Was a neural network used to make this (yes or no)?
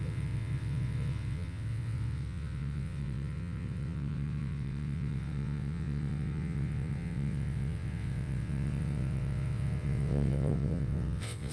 yes